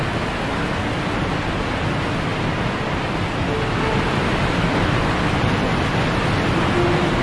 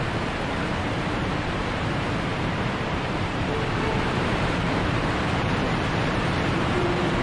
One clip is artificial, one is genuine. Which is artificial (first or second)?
second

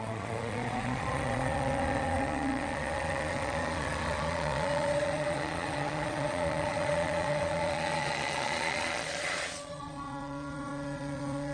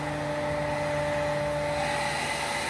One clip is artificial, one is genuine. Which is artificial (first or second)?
first